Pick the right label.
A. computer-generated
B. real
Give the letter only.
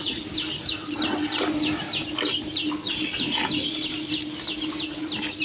B